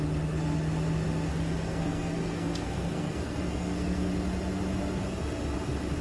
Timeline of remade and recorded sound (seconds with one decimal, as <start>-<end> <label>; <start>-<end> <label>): 0.0-1.3 recorded; 1.3-4.1 remade; 4.1-6.0 recorded